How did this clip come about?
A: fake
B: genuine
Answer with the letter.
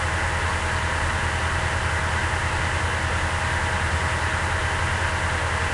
B